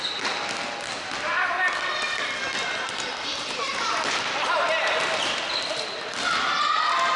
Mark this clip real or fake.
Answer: real